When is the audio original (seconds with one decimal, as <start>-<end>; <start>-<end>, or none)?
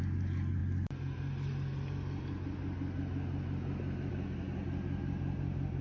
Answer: 0.0-5.8